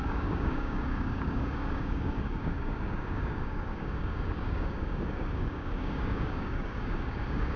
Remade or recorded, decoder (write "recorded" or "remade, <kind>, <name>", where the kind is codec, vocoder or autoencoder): remade, codec, DAC